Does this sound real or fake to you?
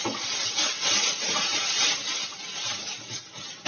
real